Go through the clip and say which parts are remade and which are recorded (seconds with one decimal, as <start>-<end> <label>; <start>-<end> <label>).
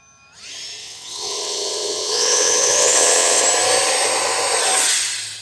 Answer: 0.0-0.8 recorded; 0.8-3.4 remade; 3.4-5.4 recorded